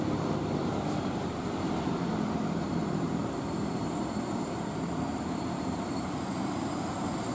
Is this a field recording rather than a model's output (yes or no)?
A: no